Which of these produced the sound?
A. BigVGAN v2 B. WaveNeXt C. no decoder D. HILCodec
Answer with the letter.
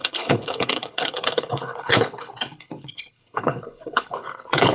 D